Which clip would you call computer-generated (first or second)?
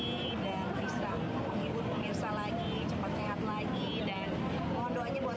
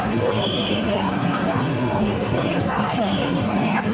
second